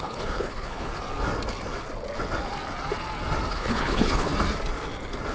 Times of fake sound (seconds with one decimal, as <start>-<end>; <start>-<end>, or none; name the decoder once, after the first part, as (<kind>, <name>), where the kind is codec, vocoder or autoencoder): 0.0-0.9 (codec, HILCodec); 3.5-4.3